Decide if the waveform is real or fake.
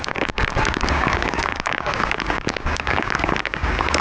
fake